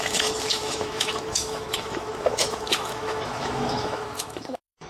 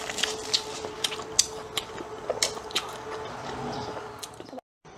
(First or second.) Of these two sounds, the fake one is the first